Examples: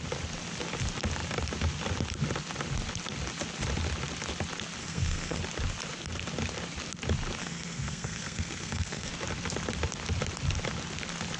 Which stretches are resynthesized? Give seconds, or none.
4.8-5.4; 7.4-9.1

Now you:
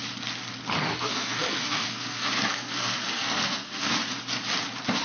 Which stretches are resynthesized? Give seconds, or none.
0.9-3.9

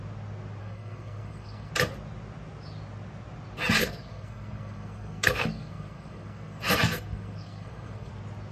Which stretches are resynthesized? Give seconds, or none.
0.6-1.7; 3.8-8.1

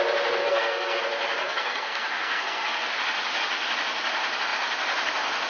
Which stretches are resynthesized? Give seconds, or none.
0.4-1.0; 1.4-2.9

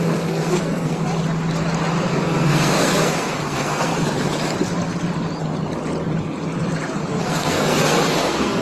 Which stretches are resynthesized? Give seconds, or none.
0.0-1.0; 2.1-3.9; 7.2-8.6

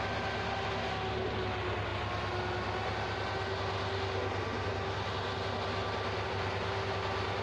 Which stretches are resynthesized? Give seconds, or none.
none

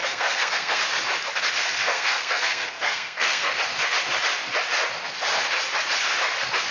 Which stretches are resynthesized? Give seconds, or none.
0.0-0.8; 1.6-3.6